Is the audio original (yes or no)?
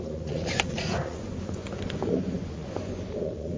no